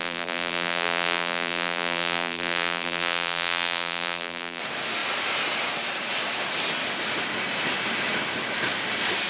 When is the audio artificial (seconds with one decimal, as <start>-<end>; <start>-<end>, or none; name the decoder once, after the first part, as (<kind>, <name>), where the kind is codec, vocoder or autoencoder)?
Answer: 0.0-4.6 (vocoder, BigVGAN v2)

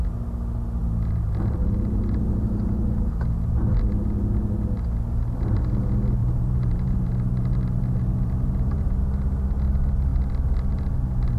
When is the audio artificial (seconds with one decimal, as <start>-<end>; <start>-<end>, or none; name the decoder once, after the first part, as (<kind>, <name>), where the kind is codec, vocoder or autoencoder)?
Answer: 0.8-3.8 (vocoder, BigVGAN v2); 6.2-9.0